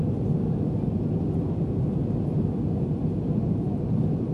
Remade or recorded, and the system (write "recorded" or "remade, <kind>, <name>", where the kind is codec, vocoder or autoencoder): recorded